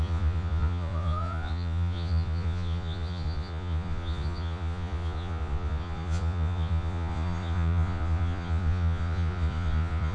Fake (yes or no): yes